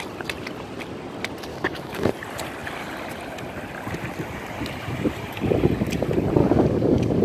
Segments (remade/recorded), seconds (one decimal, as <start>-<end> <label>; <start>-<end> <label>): 0.0-1.5 recorded; 1.5-2.1 remade; 2.1-6.4 recorded; 6.4-7.2 remade